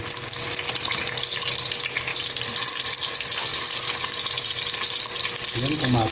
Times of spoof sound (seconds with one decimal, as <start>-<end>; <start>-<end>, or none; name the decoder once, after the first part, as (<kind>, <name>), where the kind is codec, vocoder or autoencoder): none

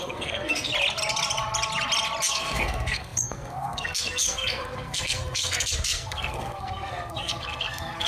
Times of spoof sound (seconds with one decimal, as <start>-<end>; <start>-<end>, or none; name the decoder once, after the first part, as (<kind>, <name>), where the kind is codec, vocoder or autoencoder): 0.0-0.7 (codec, SNAC); 2.3-8.1

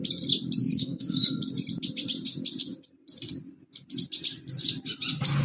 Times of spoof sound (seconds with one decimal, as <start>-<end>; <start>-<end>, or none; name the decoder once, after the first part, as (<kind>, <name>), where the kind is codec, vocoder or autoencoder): 0.6-1.4 (codec, SNAC)

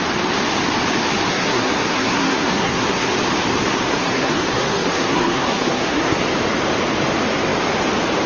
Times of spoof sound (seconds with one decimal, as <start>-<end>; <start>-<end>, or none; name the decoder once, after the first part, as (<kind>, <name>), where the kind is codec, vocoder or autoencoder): 1.3-3.1 (codec, SNAC); 3.8-6.2

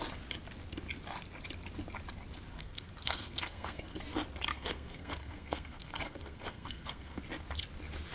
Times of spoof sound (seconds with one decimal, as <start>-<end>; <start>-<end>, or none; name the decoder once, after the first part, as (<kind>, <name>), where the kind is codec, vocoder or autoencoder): 2.5-4.0 (codec, SNAC); 4.5-7.2

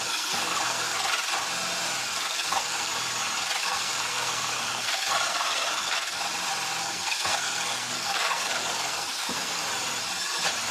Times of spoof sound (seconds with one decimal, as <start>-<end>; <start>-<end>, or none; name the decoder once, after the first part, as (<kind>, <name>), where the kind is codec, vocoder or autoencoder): 0.0-1.1 (codec, SNAC); 2.0-2.9; 3.6-6.2; 6.8-9.6

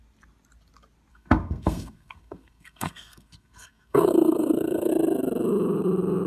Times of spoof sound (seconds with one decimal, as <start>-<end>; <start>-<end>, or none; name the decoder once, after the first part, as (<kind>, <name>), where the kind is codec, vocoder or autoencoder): 1.1-4.9 (codec, SNAC)

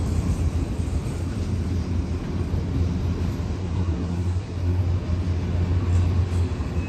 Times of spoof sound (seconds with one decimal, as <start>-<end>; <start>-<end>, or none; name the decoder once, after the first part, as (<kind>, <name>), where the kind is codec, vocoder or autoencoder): 3.6-4.8 (codec, SNAC)